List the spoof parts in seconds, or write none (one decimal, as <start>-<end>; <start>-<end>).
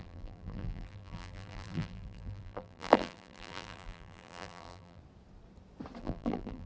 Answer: 0.0-5.0; 6.0-6.7